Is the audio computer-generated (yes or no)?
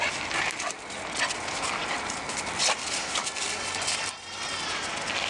no